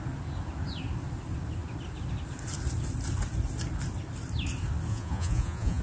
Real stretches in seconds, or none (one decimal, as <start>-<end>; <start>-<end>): 0.0-4.9